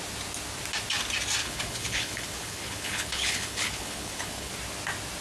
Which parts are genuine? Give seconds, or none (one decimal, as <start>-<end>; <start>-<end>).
0.0-1.4; 4.5-5.2